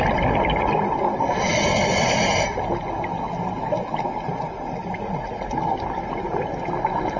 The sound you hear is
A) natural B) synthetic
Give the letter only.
A